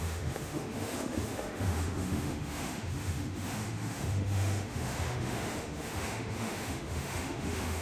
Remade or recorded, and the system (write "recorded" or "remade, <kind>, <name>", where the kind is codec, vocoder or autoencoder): remade, autoencoder, DAC-VAE